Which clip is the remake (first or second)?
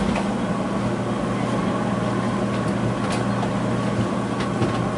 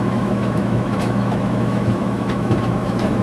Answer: second